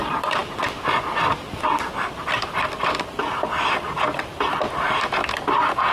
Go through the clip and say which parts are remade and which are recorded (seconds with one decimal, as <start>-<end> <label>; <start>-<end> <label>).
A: 0.0-0.4 recorded; 0.4-3.2 remade; 3.2-4.3 recorded; 4.3-5.4 remade; 5.4-5.9 recorded